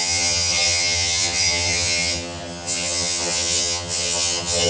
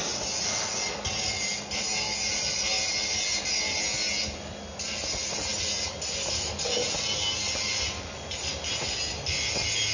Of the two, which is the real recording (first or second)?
second